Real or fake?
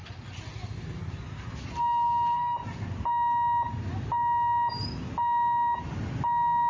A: real